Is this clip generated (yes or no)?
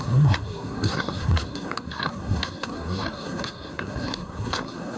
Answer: yes